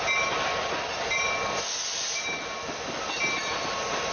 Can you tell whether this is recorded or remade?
recorded